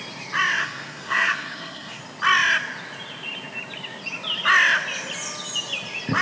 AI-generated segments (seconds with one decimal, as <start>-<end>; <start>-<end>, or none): 0.6-2.0